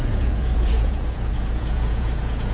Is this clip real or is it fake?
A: fake